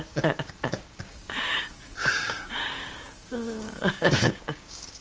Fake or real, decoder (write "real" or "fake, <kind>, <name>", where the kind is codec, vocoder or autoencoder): fake, codec, DAC